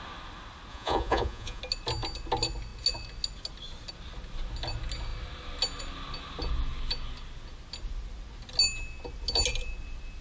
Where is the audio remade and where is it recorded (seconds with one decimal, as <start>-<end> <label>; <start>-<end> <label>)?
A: 0.0-0.7 recorded; 0.7-1.6 remade; 1.6-10.2 recorded